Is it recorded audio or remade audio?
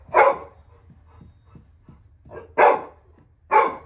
recorded